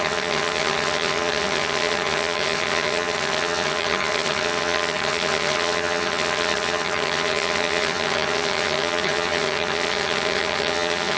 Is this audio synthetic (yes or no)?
yes